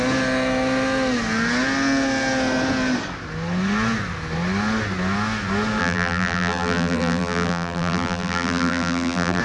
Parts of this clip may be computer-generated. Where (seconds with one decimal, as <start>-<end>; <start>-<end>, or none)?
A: 5.8-9.4